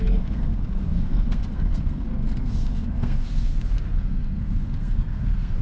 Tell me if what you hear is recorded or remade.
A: remade